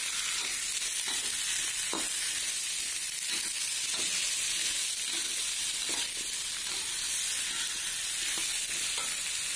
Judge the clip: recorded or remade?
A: recorded